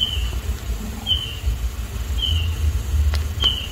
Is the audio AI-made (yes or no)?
no